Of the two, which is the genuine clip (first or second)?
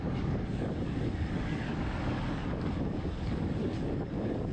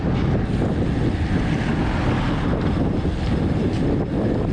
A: second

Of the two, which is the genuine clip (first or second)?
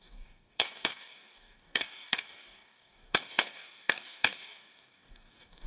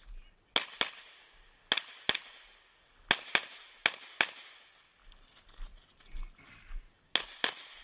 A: second